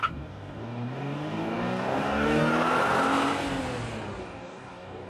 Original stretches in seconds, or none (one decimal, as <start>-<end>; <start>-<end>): 2.5-4.2